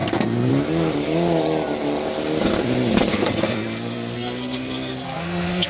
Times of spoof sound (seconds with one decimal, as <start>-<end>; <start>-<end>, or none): 0.0-0.5; 3.1-5.7